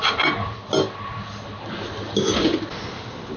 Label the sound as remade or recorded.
recorded